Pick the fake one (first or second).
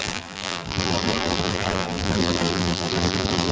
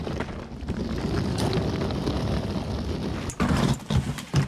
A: first